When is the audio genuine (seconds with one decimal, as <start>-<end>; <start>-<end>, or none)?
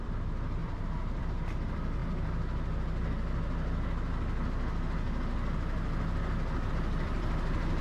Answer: 2.0-6.7